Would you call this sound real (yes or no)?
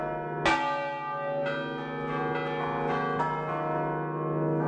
yes